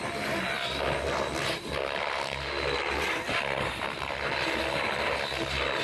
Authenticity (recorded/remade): recorded